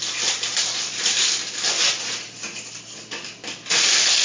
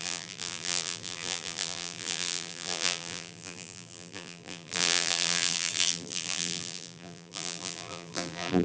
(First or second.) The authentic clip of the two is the first